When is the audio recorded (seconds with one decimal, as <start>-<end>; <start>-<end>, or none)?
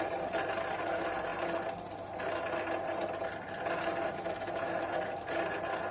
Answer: 0.0-5.9